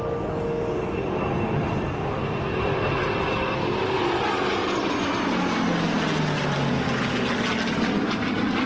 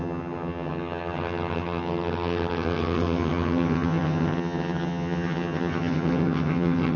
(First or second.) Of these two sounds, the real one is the first